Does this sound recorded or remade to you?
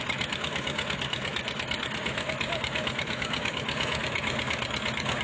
remade